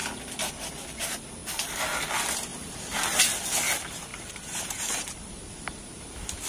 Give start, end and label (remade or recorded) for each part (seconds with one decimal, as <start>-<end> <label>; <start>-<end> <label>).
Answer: 0.0-2.5 recorded; 2.5-3.2 remade; 3.2-4.1 recorded; 4.1-5.5 remade; 5.5-6.5 recorded